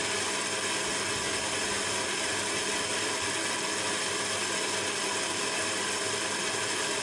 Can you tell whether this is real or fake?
real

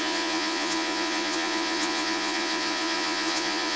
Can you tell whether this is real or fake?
fake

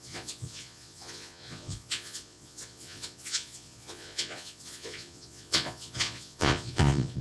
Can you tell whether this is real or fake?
fake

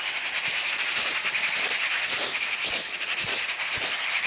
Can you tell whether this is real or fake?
real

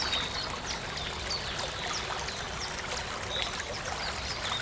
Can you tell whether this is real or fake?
real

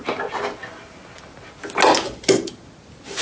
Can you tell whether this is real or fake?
real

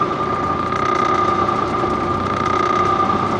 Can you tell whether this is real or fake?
real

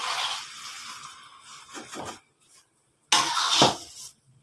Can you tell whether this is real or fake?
real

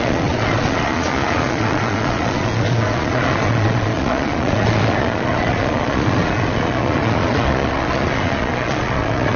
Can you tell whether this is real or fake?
fake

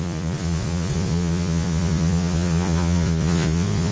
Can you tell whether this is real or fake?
fake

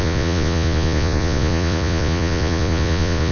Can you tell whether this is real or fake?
fake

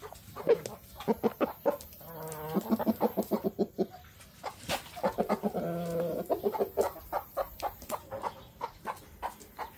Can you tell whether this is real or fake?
real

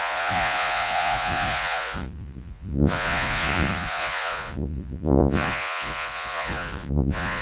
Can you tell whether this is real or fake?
fake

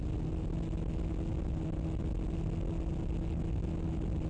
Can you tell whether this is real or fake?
real